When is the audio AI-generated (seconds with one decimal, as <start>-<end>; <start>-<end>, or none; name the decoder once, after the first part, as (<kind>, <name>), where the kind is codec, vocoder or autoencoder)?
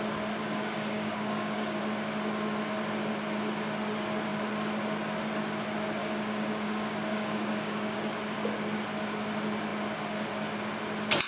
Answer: 0.4-1.8 (codec, DAC); 6.0-8.2